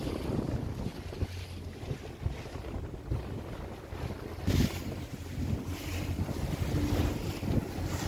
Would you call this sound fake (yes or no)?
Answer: no